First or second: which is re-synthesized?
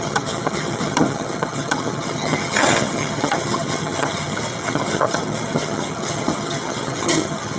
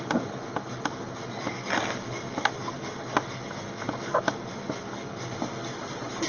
first